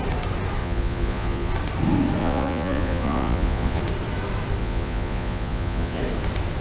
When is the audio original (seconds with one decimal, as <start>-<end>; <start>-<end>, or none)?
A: 0.0-0.6; 1.5-2.2; 3.8-4.6; 6.0-6.6